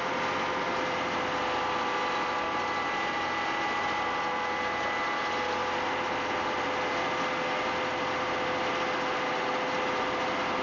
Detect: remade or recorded recorded